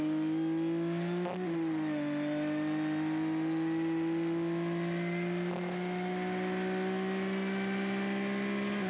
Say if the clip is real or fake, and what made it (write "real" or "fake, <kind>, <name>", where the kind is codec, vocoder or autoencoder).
real